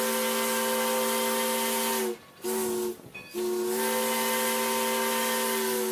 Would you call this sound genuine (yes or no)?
yes